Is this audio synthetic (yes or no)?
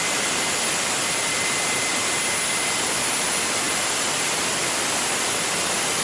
no